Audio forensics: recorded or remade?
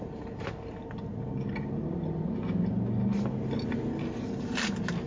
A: recorded